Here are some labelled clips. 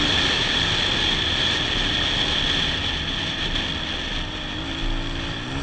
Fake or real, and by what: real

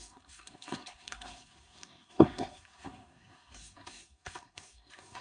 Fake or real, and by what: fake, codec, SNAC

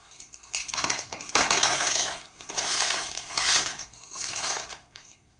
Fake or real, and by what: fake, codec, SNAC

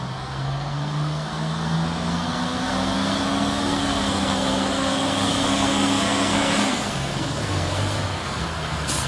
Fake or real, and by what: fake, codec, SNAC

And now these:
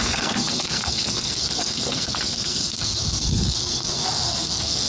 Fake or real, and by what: fake, codec, SNAC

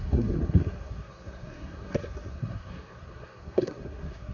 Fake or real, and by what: fake, codec, SNAC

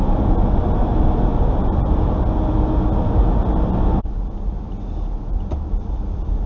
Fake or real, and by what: real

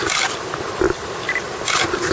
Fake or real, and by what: real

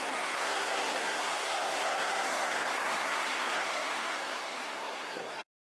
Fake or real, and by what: fake, codec, SNAC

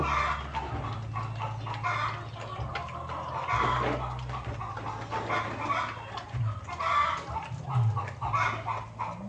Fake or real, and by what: real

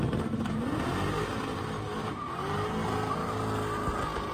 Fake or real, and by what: real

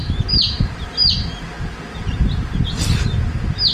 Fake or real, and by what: real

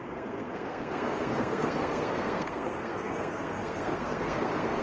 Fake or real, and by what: fake, codec, SNAC